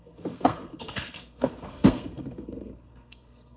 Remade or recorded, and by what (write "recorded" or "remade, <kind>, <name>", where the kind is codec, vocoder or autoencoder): remade, codec, SNAC